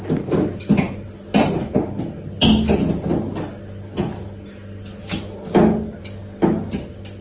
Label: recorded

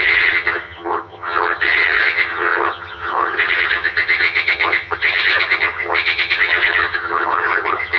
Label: remade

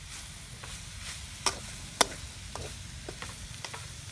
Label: recorded